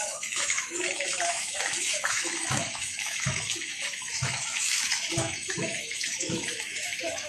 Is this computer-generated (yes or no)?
yes